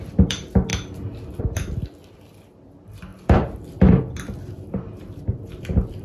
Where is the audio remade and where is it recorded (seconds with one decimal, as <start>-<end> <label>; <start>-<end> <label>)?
0.0-0.7 remade; 0.7-1.4 recorded; 1.4-6.0 remade

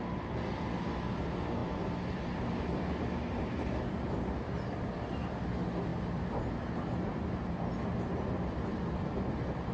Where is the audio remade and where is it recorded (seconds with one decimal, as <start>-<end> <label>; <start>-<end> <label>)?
0.0-9.7 recorded

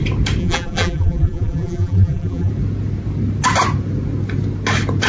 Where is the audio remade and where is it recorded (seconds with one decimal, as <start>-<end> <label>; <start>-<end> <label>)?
0.0-0.4 recorded; 0.4-2.5 remade; 2.5-5.1 recorded

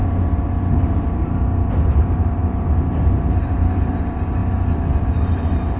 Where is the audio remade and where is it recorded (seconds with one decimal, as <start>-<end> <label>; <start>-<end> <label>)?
0.0-0.8 recorded; 0.8-4.4 remade; 4.4-5.0 recorded; 5.0-5.8 remade